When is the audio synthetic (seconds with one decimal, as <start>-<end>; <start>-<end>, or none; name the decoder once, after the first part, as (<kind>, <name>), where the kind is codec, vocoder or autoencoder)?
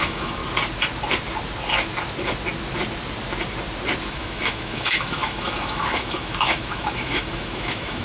0.0-0.4 (autoencoder, DAC-VAE); 4.1-8.0